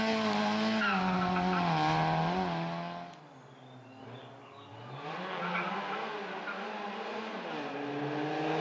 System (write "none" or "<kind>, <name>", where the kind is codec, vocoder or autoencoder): none